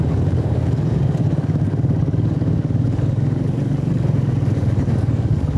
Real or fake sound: fake